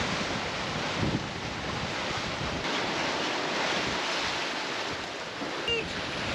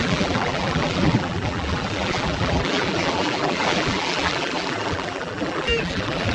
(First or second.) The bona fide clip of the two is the first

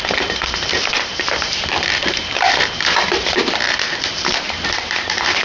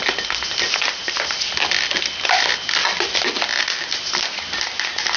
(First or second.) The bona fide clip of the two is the second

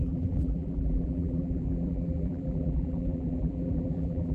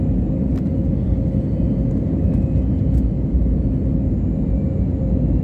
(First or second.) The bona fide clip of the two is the second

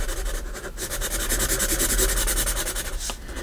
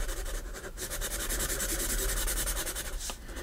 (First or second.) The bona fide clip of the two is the first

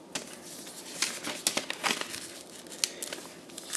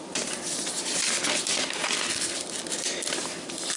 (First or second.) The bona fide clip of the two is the first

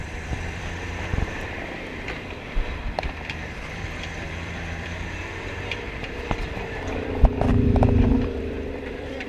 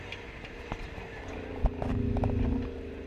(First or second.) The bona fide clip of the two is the second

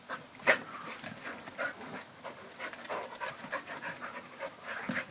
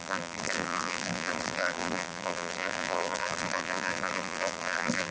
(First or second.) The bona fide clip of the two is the first